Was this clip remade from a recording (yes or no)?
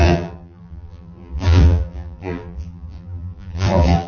yes